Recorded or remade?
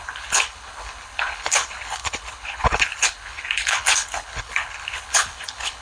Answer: remade